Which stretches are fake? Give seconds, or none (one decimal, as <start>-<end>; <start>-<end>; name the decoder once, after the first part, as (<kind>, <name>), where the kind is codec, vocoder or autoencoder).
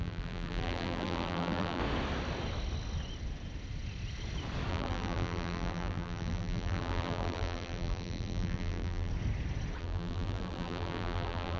0.0-1.8 (vocoder, BigVGAN v2); 4.7-9.1; 9.8-11.6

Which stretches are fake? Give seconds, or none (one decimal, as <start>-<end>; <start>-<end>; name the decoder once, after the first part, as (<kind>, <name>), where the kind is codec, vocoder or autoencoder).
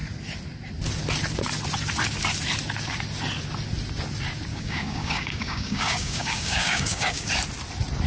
4.5-7.3 (codec, DAC)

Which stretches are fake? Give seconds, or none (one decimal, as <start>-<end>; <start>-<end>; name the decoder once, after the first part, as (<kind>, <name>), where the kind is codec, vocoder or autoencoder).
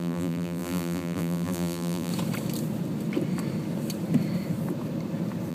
0.0-2.1 (vocoder, BigVGAN v2)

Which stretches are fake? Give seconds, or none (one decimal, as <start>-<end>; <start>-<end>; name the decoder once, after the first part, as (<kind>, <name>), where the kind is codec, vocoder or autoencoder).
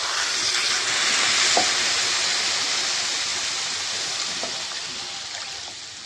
none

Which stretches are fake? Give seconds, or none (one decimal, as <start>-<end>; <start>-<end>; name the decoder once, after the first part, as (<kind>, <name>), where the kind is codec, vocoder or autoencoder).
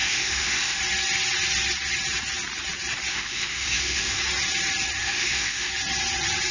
0.0-0.8 (autoencoder, DAC-VAE); 3.1-4.2; 5.0-5.7